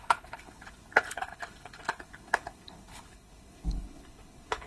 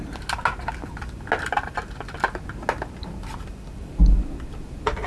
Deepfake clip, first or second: first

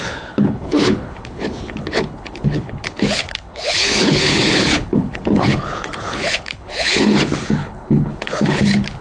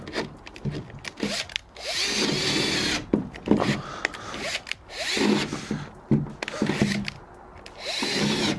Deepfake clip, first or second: first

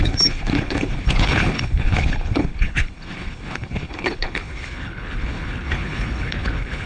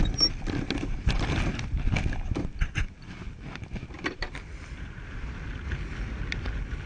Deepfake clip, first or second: first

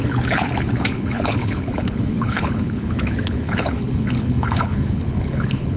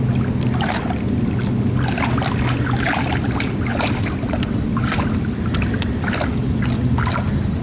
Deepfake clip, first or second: first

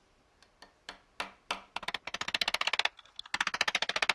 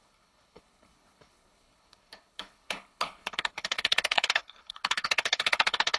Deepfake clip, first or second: second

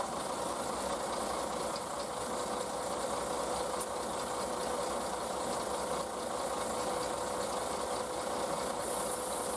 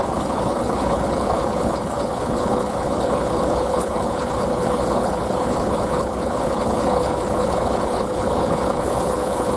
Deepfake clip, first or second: second